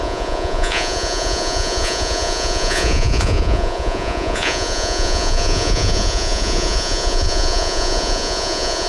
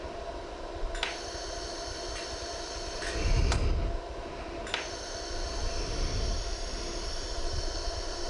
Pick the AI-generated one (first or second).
first